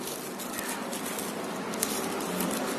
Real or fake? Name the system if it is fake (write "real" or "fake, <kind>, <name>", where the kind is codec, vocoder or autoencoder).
real